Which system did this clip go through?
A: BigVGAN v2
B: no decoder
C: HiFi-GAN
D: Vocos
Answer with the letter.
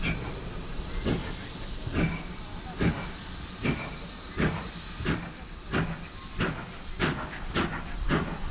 B